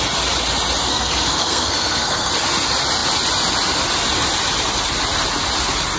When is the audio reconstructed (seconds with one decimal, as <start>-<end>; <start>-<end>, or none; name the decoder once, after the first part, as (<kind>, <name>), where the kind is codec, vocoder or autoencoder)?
0.8-2.3 (codec, SNAC)